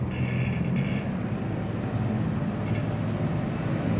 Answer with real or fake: real